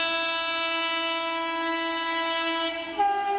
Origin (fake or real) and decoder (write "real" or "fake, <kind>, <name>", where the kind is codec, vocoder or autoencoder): real